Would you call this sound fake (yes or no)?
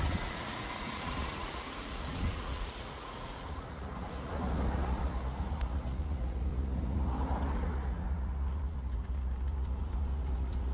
yes